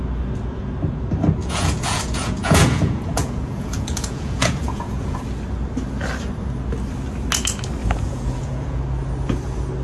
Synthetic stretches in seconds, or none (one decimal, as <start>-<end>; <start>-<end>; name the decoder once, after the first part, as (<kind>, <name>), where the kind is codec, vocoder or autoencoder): 1.4-5.2 (vocoder, Vocos); 7.8-8.8